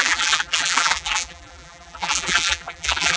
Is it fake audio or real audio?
fake